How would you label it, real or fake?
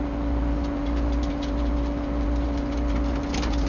real